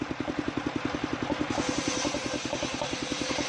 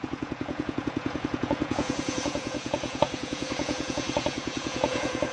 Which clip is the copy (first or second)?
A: second